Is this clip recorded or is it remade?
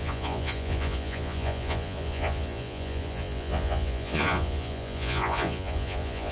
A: remade